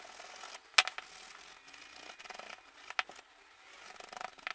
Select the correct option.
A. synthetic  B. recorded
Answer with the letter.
B